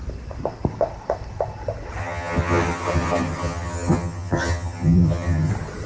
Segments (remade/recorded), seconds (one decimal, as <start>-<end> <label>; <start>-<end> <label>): 0.0-2.0 recorded; 2.0-5.5 remade; 5.5-5.9 recorded